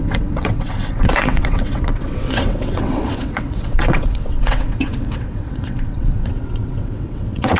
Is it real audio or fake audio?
fake